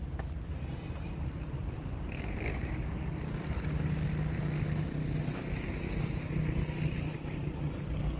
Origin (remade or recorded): recorded